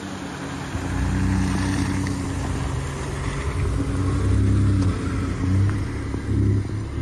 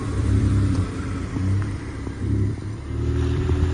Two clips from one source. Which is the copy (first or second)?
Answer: second